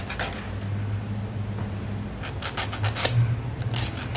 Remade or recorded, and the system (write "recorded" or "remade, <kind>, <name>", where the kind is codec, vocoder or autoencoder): recorded